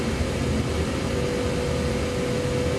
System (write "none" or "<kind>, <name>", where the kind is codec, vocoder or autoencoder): none